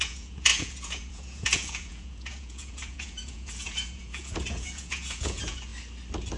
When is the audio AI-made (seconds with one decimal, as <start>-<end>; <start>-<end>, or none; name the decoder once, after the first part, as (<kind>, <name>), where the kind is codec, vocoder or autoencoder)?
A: 0.0-5.7 (vocoder, Vocos)